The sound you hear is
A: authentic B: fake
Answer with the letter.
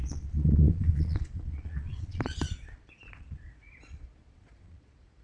B